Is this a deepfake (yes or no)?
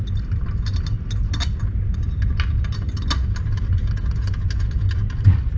no